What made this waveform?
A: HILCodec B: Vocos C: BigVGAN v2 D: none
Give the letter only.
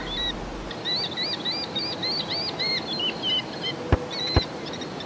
D